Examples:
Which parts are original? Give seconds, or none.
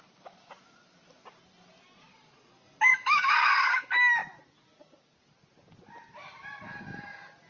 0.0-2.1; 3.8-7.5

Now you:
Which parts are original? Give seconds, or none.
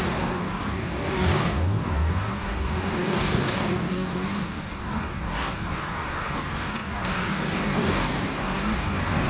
none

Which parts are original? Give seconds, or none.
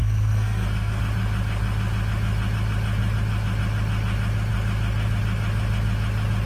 1.0-6.5